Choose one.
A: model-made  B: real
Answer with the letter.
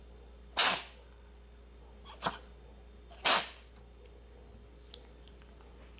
B